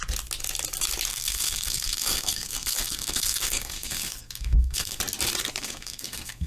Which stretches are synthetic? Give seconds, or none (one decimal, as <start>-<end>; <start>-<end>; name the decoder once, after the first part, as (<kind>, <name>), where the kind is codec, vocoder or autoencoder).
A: 1.1-5.0 (codec, SNAC); 5.6-6.5